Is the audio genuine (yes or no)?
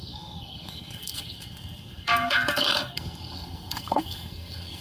no